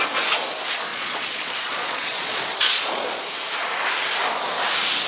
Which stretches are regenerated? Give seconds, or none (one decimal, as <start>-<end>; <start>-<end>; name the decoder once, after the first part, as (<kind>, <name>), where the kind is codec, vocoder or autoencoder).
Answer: 0.9-3.2 (vocoder, Vocos)